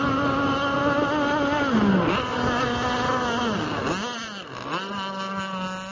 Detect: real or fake real